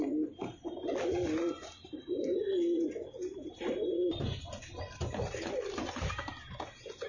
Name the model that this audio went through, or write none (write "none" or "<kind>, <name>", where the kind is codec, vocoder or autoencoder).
none